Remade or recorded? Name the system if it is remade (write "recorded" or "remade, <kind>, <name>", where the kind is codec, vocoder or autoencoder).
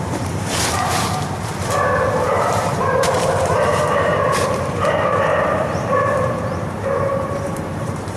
remade, vocoder, BigVGAN v2